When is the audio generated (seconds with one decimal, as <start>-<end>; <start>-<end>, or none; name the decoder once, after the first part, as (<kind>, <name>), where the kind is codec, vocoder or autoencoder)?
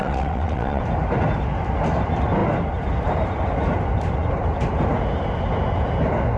0.0-0.8 (vocoder, WaveNeXt)